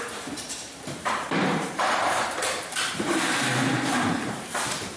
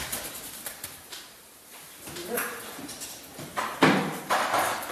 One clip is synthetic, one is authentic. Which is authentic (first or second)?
second